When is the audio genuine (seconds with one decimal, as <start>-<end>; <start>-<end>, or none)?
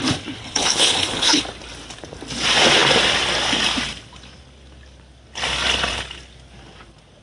0.0-0.4; 1.4-7.2